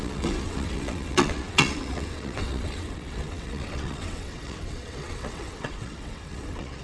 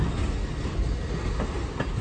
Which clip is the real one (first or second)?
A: second